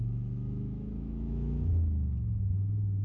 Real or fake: fake